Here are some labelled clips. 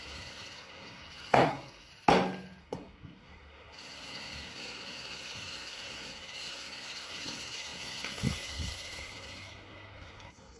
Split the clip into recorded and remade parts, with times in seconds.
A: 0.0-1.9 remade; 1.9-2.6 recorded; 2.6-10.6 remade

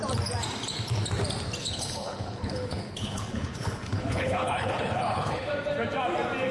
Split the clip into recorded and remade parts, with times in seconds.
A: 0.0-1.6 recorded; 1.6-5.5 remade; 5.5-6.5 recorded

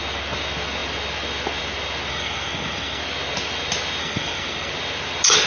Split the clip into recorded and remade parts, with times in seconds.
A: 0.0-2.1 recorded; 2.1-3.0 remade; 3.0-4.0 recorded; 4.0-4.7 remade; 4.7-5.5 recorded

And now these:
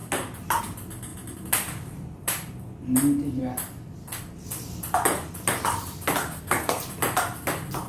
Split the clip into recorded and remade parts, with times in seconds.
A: 0.0-6.2 recorded; 6.2-6.8 remade; 6.8-7.9 recorded

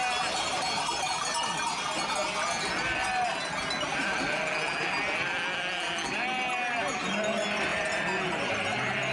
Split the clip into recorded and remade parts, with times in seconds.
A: 0.0-3.9 recorded; 3.9-4.5 remade; 4.5-7.7 recorded; 7.7-8.5 remade; 8.5-9.1 recorded